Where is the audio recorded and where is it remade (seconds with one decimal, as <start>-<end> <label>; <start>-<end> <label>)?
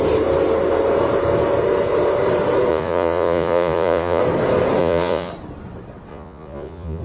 0.0-2.7 recorded; 2.7-4.2 remade; 4.2-4.8 recorded; 4.8-5.3 remade; 5.3-6.1 recorded; 6.1-7.0 remade